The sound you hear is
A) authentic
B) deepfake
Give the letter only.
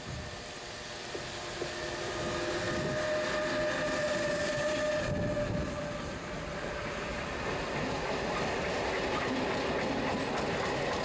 A